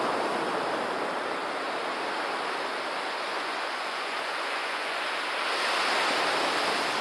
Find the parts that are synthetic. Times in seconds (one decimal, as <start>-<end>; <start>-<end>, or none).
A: 3.3-5.0